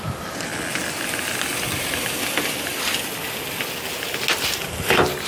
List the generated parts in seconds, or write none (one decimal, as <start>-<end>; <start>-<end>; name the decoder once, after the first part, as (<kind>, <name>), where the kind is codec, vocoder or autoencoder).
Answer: none